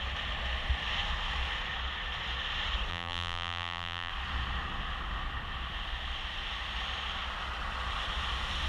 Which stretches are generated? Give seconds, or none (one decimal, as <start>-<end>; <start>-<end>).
2.9-4.1